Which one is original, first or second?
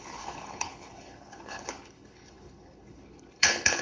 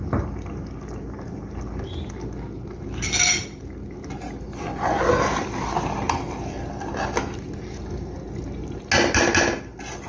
second